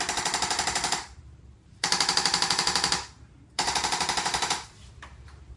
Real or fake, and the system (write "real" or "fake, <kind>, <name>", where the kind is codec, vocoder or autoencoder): fake, vocoder, BigVGAN v2